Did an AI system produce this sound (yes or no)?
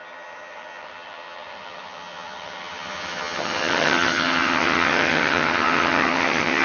yes